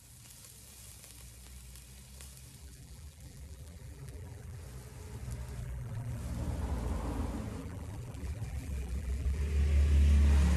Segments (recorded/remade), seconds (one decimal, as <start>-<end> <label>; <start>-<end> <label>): 0.0-2.6 recorded; 2.6-4.6 remade; 4.6-5.6 recorded; 5.6-6.2 remade; 6.2-7.6 recorded; 7.6-9.4 remade; 9.4-10.6 recorded

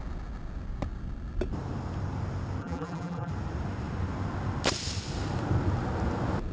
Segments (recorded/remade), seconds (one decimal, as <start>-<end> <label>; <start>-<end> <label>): 0.0-2.6 recorded; 2.6-3.3 remade; 3.3-6.5 recorded

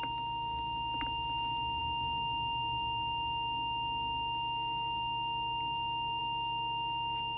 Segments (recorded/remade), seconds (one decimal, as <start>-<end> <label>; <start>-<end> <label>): 0.0-7.4 recorded

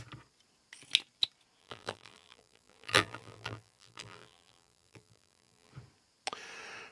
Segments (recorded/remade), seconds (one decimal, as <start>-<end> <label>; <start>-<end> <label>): 0.0-1.6 recorded; 1.6-5.7 remade; 5.7-6.9 recorded

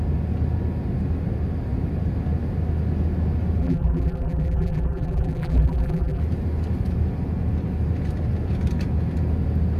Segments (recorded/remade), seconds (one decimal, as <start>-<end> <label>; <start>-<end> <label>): 0.0-3.6 recorded; 3.6-6.2 remade; 6.2-9.8 recorded